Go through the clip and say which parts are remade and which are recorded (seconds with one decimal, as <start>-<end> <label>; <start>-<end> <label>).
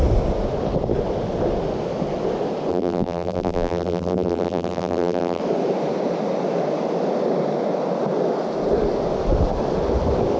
0.0-2.7 recorded; 2.7-5.4 remade; 5.4-10.4 recorded